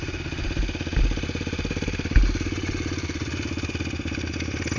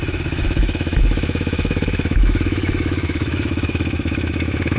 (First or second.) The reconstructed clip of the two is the second